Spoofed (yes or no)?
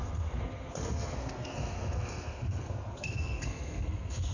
yes